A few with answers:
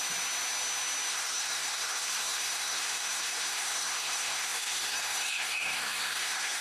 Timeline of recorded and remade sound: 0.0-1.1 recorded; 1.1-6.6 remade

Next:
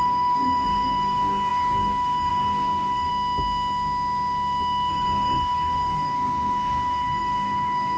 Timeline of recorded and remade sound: 0.0-3.1 remade; 3.1-4.9 recorded; 4.9-8.0 remade

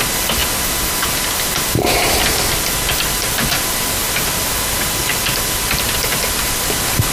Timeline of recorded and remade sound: 0.0-7.1 recorded

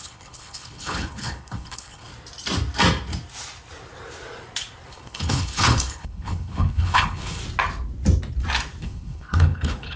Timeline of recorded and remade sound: 0.0-2.1 remade; 2.1-4.9 recorded; 4.9-7.4 remade; 7.4-8.8 recorded; 8.8-10.0 remade

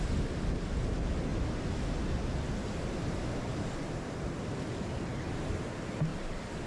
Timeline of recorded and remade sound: 0.0-6.1 recorded; 6.1-6.7 remade

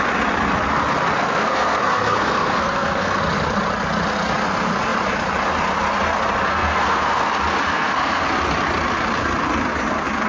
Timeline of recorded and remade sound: 0.0-1.2 recorded; 1.2-3.2 remade; 3.2-6.5 recorded; 6.5-7.3 remade; 7.3-7.7 recorded; 7.7-8.2 remade; 8.2-10.3 recorded

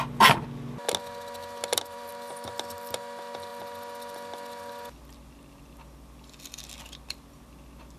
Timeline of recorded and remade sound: 0.0-1.4 recorded; 1.4-2.1 remade; 2.1-8.0 recorded

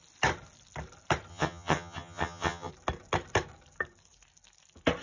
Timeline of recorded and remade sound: 0.0-1.3 recorded; 1.3-2.7 remade; 2.7-5.0 recorded